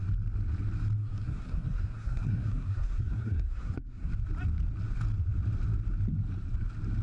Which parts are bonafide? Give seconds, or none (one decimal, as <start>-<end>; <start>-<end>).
0.0-1.0; 4.1-7.0